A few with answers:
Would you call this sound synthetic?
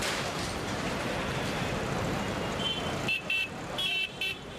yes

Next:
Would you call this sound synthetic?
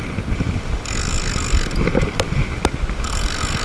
no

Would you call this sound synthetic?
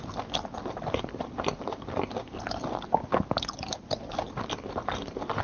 yes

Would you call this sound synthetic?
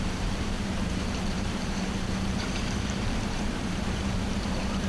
yes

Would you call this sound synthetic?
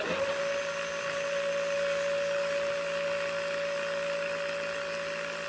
no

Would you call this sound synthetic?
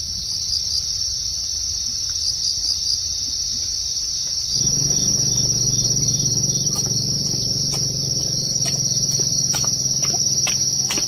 yes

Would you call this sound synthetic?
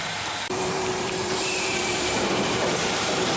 yes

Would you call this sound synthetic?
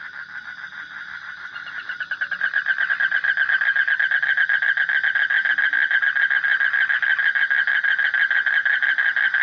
no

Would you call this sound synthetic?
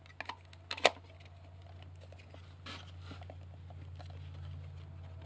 no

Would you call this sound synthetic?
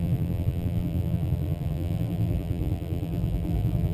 yes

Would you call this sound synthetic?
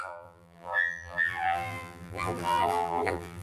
yes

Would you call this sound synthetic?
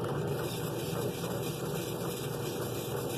no